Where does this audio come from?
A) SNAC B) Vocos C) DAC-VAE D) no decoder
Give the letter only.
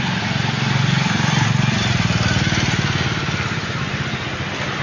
D